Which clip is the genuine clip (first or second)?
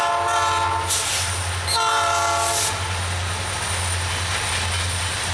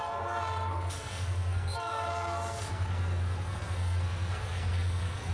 first